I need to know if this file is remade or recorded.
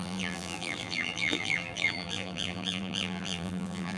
remade